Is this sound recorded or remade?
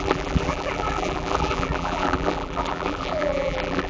remade